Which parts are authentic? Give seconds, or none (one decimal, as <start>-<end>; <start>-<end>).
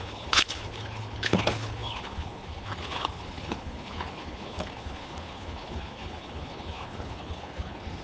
none